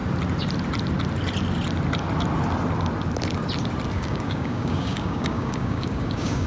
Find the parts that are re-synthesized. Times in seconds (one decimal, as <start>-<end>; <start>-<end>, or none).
3.9-6.5